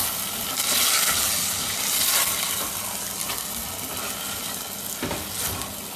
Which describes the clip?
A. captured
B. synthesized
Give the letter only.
A